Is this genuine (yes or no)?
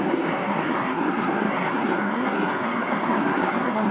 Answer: no